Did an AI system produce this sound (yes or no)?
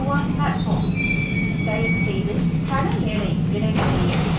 no